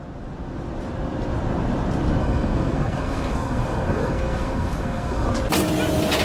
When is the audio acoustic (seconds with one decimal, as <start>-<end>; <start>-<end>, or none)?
0.0-2.2; 5.3-6.2